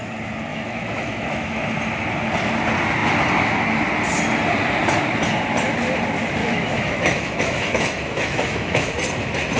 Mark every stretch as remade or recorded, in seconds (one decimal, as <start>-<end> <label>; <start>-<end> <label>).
0.0-0.5 recorded; 0.5-1.6 remade; 1.6-6.4 recorded; 6.4-8.9 remade; 8.9-9.6 recorded